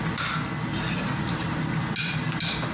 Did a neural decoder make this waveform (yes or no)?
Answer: yes